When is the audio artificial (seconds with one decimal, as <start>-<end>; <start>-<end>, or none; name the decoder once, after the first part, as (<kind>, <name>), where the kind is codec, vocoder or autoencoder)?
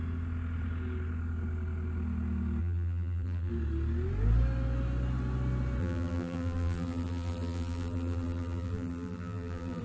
2.6-3.5 (vocoder, BigVGAN v2); 5.8-9.8